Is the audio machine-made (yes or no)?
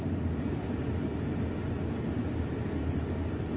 no